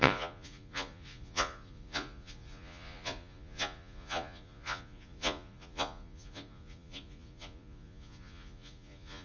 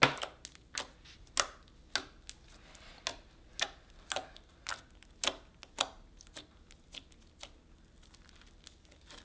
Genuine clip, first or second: second